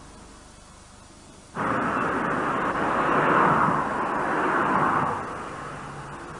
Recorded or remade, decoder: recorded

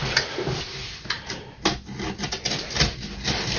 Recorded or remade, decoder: recorded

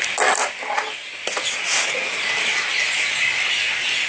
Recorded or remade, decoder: recorded